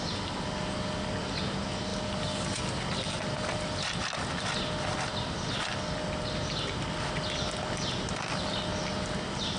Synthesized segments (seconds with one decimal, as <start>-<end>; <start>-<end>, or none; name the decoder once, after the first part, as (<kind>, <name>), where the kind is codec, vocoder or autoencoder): none